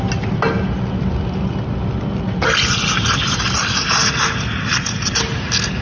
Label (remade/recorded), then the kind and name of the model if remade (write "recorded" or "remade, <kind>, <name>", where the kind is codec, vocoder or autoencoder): recorded